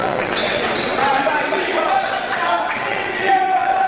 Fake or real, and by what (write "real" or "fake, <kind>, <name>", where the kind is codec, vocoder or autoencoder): fake, vocoder, WaveNeXt